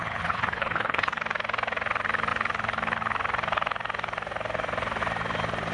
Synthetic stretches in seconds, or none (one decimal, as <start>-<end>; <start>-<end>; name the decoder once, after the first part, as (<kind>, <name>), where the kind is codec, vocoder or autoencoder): 0.0-1.2 (codec, HILCodec)